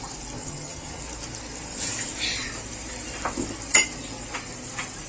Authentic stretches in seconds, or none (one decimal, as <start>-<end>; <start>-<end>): 0.0-0.4; 1.0-5.1